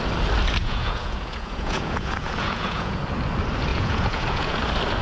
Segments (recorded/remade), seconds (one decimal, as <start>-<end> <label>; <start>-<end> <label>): 0.0-0.6 recorded; 0.6-3.0 remade; 3.0-3.7 recorded; 3.7-4.6 remade; 4.6-5.0 recorded